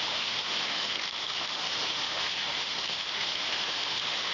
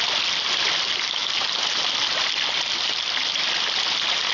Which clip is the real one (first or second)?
second